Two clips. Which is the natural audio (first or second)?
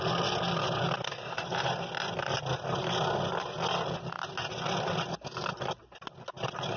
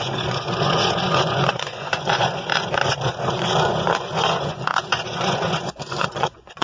first